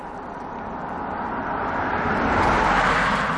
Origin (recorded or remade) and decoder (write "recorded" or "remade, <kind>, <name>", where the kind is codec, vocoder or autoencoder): recorded